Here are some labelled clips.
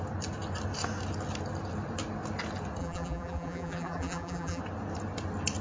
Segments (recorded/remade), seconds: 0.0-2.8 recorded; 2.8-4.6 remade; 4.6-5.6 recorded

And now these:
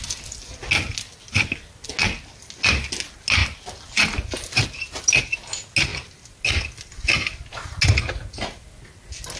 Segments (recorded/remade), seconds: 0.0-3.4 recorded; 3.4-5.0 remade; 5.0-9.4 recorded